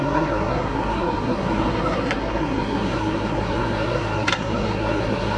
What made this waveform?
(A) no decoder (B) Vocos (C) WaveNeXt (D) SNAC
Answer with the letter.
D